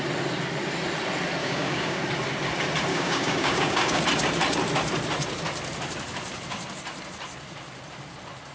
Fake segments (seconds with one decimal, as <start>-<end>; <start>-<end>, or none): 1.4-2.0; 2.9-4.0